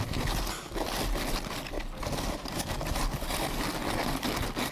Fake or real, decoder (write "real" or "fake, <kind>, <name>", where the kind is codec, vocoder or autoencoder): real